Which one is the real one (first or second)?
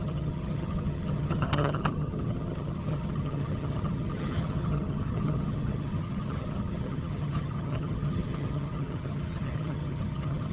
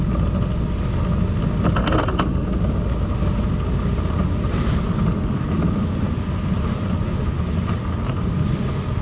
second